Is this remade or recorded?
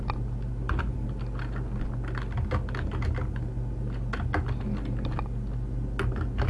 recorded